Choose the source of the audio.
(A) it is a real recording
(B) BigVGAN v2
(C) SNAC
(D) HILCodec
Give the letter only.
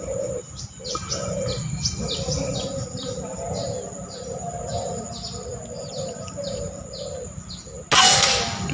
A